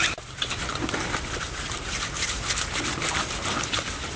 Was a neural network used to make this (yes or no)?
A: no